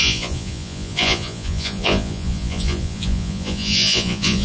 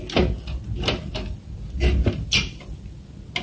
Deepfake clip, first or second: first